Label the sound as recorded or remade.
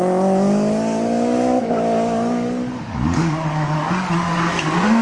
remade